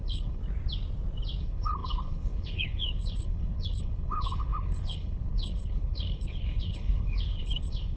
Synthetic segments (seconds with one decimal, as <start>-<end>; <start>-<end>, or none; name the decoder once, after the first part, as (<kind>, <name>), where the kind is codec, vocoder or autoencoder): 0.0-0.4 (codec, HILCodec); 1.4-8.0